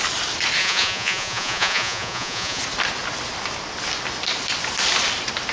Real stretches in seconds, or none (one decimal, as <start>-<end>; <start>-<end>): 0.0-0.6; 2.6-5.5